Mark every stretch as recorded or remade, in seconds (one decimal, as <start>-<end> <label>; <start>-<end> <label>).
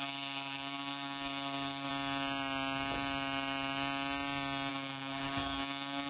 0.0-1.9 remade; 1.9-4.7 recorded; 4.7-6.1 remade